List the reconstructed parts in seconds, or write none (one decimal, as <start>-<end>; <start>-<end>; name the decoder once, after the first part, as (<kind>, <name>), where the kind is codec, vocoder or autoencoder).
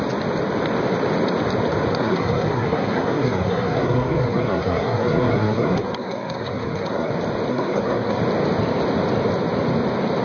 1.9-7.1 (codec, SNAC); 7.5-8.2